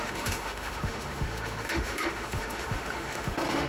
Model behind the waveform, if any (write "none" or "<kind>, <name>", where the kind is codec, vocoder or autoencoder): autoencoder, DAC-VAE